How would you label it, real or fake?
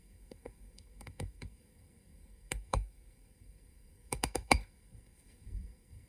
fake